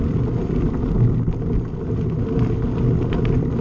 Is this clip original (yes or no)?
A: yes